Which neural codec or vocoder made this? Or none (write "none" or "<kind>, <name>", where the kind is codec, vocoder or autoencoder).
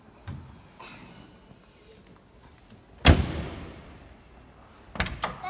none